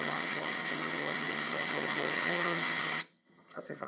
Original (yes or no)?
no